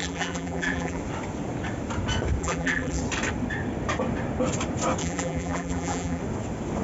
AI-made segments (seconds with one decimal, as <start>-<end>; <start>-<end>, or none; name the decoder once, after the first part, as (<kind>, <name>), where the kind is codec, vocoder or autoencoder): 0.0-1.0 (vocoder, BigVGAN v2); 2.4-3.0; 5.0-6.2